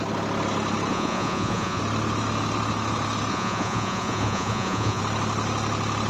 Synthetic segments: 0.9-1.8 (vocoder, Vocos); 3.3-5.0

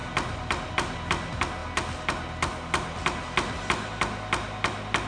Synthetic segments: none

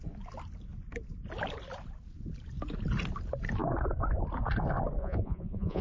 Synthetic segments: 5.0-5.8 (vocoder, Vocos)

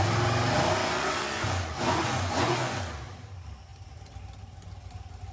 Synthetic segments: 0.8-2.8 (vocoder, Vocos)

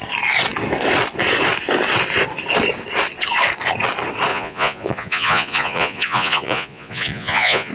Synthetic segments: 4.3-7.7 (vocoder, Vocos)

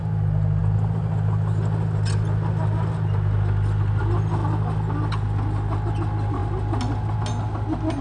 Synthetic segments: none